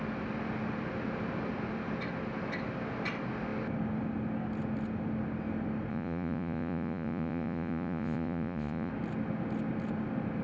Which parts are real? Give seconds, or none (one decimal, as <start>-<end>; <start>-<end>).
0.0-5.9; 8.9-10.4